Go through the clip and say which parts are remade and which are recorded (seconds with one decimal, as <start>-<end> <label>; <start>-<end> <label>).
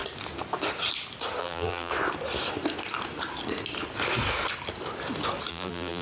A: 0.0-1.4 recorded; 1.4-1.9 remade; 1.9-5.5 recorded; 5.5-6.0 remade